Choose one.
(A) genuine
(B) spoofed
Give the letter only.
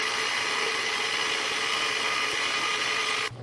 A